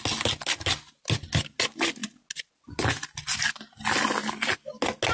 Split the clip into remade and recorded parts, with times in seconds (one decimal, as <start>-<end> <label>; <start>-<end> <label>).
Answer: 0.0-5.1 recorded